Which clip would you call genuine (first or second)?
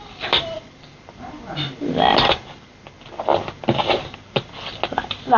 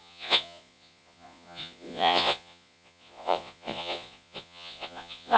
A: first